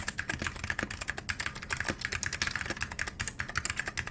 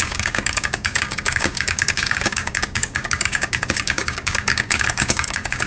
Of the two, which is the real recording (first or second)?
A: first